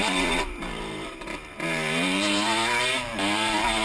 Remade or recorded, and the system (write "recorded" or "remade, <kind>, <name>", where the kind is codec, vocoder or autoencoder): remade, vocoder, BigVGAN v2